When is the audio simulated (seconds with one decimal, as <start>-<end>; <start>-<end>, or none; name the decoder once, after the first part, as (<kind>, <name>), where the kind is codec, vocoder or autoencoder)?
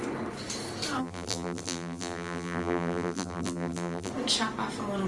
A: 1.0-4.1 (vocoder, BigVGAN v2)